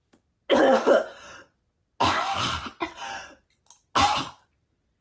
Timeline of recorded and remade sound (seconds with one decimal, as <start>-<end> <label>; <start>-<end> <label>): 0.0-5.0 recorded